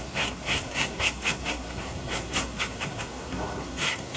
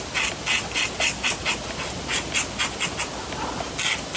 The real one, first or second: second